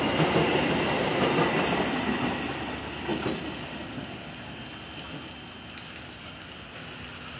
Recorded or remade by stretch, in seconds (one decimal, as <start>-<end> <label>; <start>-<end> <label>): 0.0-7.4 recorded